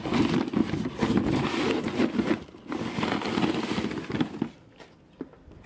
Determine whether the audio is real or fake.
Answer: real